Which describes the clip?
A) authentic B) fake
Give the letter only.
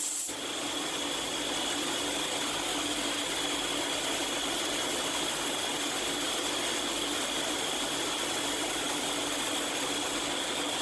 A